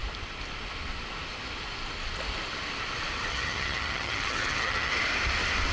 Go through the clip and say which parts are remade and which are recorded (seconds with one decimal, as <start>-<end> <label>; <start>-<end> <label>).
0.0-3.3 recorded; 3.3-4.9 remade; 4.9-5.7 recorded